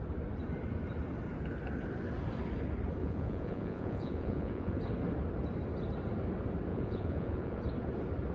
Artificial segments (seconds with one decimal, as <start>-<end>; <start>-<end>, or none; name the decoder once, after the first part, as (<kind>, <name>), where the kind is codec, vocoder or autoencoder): 3.0-4.8 (vocoder, Vocos); 6.7-7.6

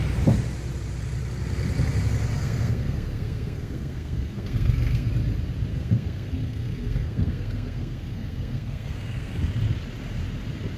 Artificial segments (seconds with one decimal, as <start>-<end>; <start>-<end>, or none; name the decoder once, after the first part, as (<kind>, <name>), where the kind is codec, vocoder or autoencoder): 2.3-5.1 (codec, SNAC); 5.7-9.4

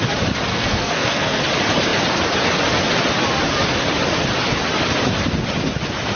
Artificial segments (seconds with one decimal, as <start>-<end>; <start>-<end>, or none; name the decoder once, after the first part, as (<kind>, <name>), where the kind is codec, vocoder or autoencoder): 0.5-1.4 (codec, SNAC)

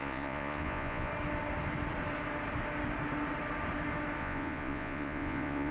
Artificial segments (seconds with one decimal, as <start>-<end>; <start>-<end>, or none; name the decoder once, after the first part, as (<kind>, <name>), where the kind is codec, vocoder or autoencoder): 0.0-1.1 (vocoder, Vocos); 4.2-5.7

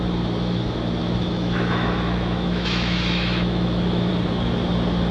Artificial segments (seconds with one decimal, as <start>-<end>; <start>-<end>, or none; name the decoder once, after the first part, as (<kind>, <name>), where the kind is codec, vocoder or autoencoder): 1.0-4.1 (autoencoder, DAC-VAE)

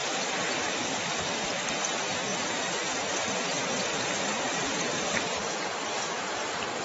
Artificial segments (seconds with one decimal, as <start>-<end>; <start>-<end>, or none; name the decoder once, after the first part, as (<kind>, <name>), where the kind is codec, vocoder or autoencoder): 2.3-6.1 (vocoder, BigVGAN v2)

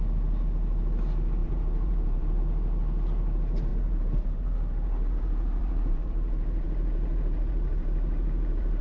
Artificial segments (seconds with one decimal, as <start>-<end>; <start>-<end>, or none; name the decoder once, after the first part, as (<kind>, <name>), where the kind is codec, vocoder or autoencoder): 1.4-2.4 (vocoder, BigVGAN v2); 3.7-8.8

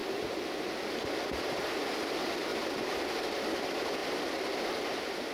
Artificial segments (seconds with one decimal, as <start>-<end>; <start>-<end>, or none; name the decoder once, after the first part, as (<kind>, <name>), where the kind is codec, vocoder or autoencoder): 0.0-0.6 (vocoder, BigVGAN v2); 2.5-3.0; 4.0-5.3